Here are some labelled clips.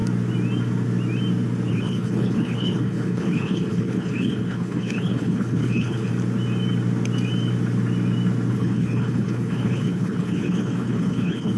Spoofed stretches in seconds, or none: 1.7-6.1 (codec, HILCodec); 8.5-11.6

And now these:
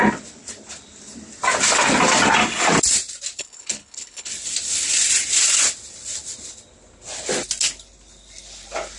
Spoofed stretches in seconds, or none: 3.4-4.3 (codec, HILCodec)

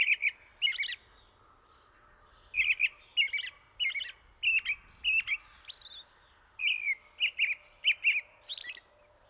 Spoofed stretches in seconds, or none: none

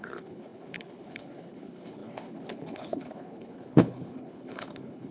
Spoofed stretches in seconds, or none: 0.0-5.1 (codec, HILCodec)

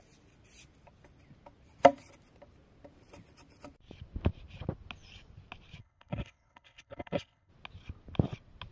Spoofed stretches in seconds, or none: 5.8-7.5 (codec, HILCodec)

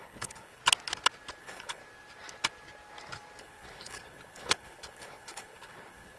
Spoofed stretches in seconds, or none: 0.0-0.6 (codec, HILCodec); 1.4-1.8; 3.4-6.2